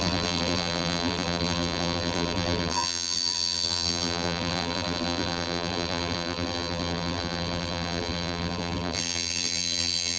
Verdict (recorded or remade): remade